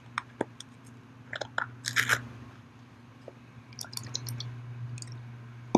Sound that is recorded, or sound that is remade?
recorded